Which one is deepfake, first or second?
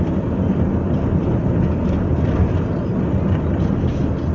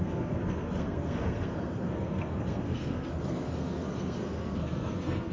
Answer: second